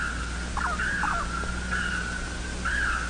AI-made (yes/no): no